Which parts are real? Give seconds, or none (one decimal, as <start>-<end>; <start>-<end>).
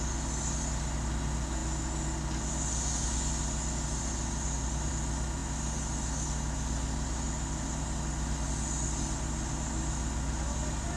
0.0-11.0